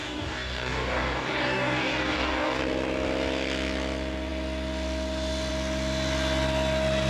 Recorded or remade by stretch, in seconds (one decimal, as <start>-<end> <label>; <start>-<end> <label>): 0.0-2.6 remade; 2.6-7.1 recorded